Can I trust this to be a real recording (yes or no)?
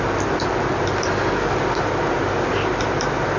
yes